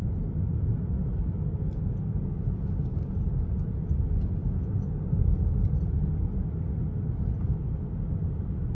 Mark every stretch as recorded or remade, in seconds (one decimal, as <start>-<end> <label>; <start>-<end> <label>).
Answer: 0.0-4.4 recorded; 4.4-5.5 remade; 5.5-8.7 recorded